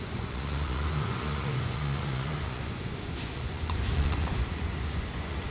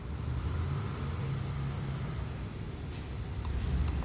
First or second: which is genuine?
second